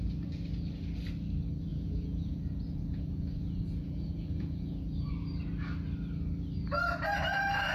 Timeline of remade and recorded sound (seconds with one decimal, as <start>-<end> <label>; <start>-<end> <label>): 0.0-1.7 recorded; 1.7-5.1 remade; 5.1-7.7 recorded